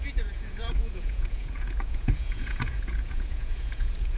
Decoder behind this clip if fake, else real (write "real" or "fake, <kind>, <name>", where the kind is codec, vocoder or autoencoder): fake, vocoder, Vocos